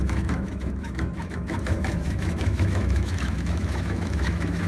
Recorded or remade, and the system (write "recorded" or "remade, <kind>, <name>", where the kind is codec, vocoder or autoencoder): remade, autoencoder, DAC-VAE